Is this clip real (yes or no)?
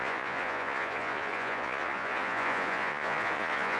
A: no